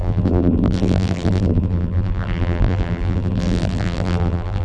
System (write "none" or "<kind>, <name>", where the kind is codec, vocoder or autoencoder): vocoder, BigVGAN v2